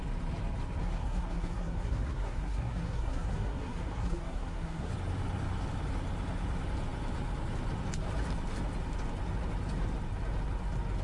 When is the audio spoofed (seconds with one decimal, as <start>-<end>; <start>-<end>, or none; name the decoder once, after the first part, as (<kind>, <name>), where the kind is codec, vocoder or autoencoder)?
0.8-4.9 (codec, SNAC)